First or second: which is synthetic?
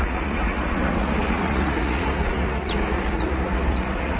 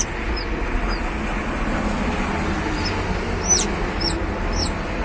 first